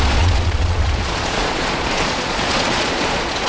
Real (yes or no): no